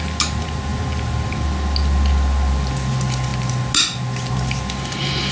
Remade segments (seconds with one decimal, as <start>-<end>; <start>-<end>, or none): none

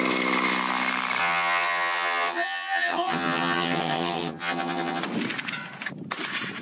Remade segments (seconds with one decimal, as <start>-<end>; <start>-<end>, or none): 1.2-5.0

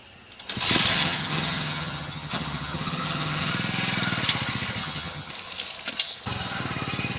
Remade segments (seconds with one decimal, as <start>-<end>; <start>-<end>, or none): 0.9-3.5; 4.8-5.3

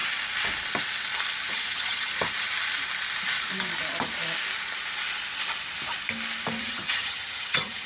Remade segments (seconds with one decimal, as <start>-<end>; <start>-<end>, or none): 1.5-2.1; 6.6-7.9

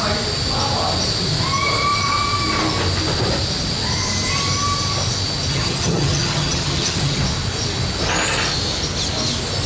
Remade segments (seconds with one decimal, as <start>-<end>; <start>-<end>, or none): 5.5-7.2